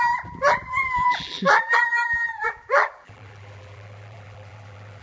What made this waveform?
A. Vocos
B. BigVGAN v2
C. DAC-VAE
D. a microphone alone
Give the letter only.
B